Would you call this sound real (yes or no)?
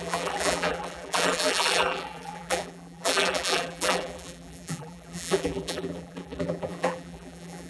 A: no